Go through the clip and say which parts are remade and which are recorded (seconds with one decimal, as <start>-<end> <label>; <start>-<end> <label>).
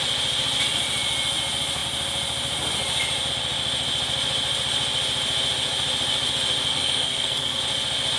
0.0-6.7 recorded; 6.7-7.6 remade; 7.6-8.2 recorded